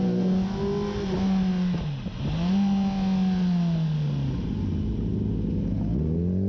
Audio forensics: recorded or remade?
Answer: recorded